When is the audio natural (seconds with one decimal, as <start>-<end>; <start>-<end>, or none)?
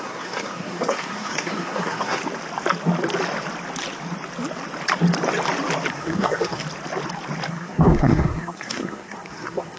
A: 2.2-5.9; 6.6-7.5